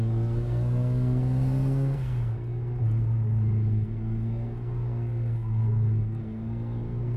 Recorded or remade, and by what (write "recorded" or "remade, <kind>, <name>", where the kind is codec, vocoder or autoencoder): remade, codec, SNAC